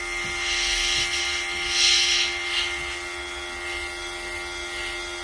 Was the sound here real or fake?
real